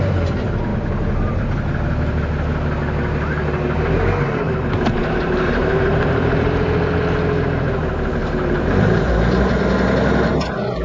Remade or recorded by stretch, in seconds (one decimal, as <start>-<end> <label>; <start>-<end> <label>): 0.0-5.0 recorded; 5.0-6.8 remade; 6.8-8.2 recorded; 8.2-9.1 remade; 9.1-10.8 recorded